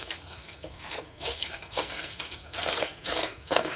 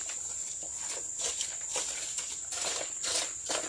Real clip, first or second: second